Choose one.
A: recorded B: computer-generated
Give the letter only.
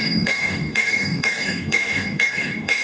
B